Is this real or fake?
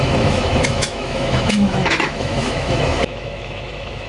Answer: fake